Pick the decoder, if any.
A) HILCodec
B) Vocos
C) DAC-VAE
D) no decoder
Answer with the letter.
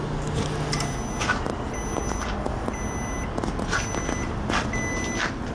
D